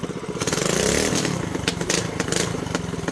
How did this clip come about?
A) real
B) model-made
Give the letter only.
A